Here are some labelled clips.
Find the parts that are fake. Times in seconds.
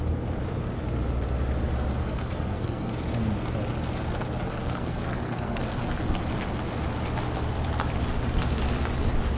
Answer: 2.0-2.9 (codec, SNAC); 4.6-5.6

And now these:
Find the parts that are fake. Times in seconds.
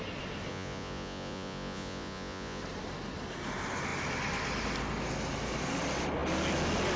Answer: 0.5-2.6 (vocoder, Vocos)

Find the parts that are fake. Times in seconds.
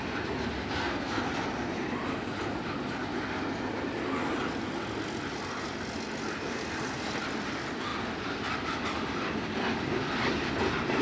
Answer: 0.8-1.3 (codec, SNAC)